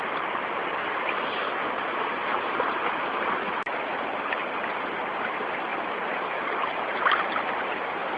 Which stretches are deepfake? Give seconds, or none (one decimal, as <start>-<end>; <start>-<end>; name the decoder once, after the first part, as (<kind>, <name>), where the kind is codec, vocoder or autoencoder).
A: none